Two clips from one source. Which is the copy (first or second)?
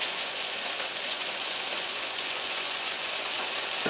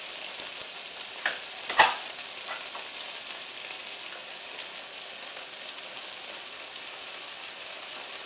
first